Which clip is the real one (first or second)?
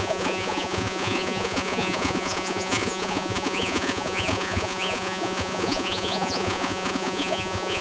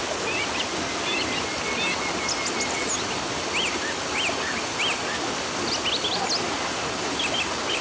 second